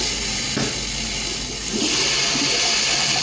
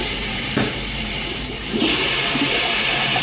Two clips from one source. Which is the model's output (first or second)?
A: second